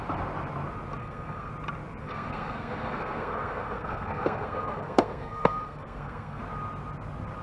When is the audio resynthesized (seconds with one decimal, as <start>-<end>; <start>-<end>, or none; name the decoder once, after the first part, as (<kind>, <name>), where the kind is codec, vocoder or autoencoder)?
1.0-1.5 (codec, SNAC); 2.0-6.4